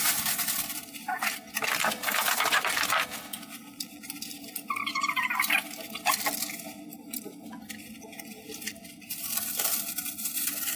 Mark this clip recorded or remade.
remade